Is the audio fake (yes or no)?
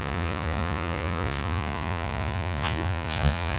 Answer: yes